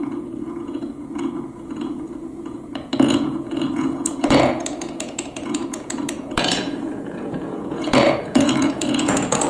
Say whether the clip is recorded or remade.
remade